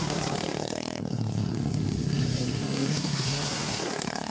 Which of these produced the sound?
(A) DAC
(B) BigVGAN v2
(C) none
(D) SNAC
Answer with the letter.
D